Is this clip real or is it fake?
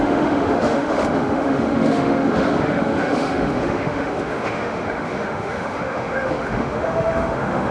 fake